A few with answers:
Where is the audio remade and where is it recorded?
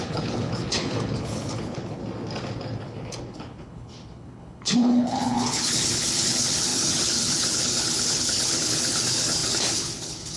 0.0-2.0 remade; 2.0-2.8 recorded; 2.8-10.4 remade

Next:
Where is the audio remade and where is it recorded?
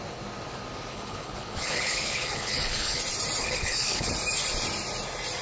0.0-0.9 recorded; 0.9-3.0 remade; 3.0-3.4 recorded; 3.4-4.1 remade; 4.1-5.4 recorded